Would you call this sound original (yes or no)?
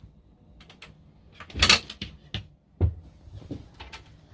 yes